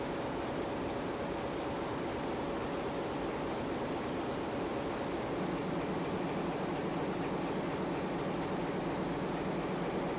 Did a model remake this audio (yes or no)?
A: no